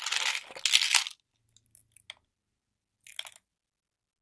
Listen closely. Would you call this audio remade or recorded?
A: recorded